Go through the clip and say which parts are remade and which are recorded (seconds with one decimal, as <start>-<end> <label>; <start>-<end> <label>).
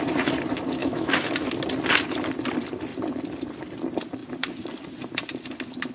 0.0-0.8 recorded; 0.8-1.3 remade; 1.3-5.9 recorded